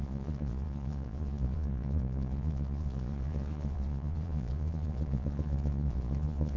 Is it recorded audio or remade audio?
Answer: remade